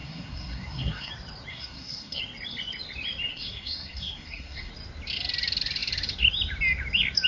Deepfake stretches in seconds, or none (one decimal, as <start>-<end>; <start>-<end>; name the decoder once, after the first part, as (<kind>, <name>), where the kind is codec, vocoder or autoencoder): 0.0-1.1 (codec, SNAC); 1.5-2.2; 3.3-4.7